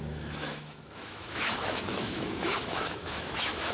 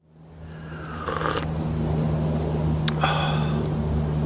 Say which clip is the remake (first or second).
first